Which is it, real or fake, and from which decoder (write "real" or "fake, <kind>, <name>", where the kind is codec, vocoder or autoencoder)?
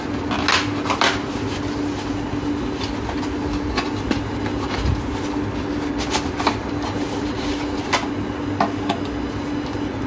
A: real